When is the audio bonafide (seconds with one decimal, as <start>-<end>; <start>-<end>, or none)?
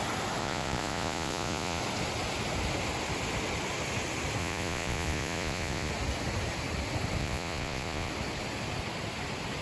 0.0-0.4; 1.8-4.4; 5.9-7.2; 8.1-9.6